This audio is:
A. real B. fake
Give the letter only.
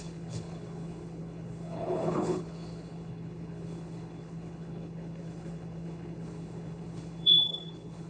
B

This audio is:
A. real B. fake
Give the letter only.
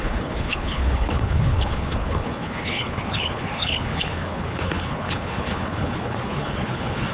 B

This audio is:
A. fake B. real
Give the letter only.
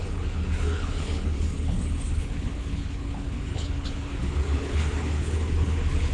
A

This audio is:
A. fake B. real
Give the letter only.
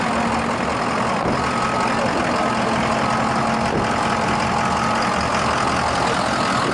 B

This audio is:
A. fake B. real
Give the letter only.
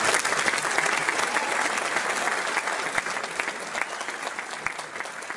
B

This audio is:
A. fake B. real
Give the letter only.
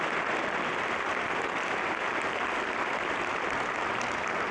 B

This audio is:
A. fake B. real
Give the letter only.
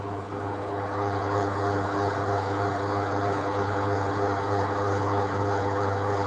A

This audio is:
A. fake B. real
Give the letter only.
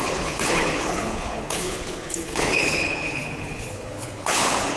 A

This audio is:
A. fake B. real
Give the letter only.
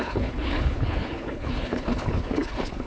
A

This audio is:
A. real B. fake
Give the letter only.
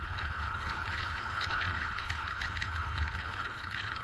B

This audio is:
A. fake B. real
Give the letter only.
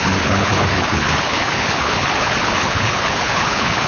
A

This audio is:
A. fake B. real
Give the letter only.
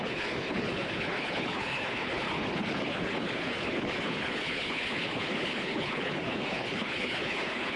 A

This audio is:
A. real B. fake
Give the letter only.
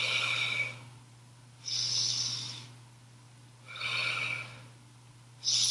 A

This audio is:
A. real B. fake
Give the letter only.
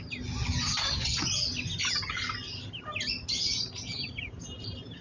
A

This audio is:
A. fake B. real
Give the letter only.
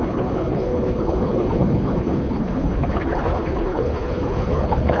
A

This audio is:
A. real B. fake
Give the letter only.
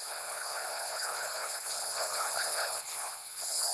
B